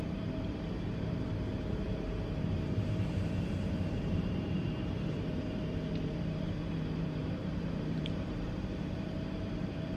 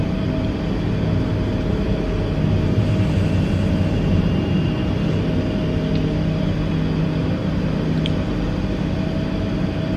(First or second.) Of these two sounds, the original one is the second